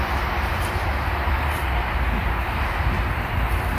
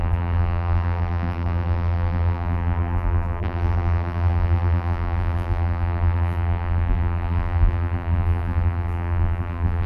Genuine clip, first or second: first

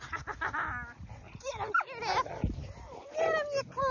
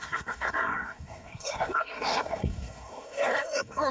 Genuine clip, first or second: first